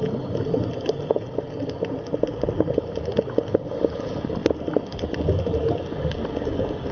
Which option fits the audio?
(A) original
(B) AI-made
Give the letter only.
A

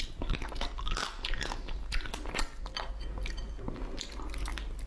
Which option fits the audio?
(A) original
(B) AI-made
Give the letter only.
A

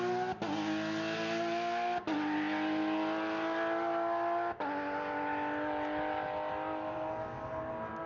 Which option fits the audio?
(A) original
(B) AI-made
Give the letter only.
A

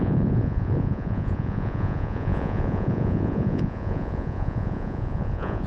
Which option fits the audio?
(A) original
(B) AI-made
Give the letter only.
B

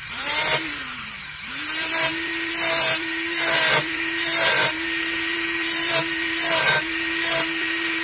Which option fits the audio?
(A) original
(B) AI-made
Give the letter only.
B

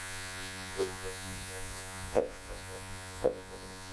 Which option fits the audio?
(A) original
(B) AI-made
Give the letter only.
B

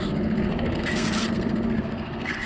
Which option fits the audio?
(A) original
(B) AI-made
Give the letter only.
B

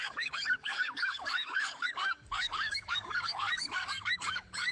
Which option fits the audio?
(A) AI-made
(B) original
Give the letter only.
A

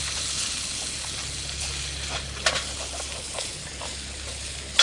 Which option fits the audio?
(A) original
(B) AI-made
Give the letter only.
A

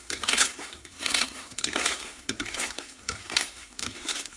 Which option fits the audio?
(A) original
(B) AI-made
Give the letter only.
B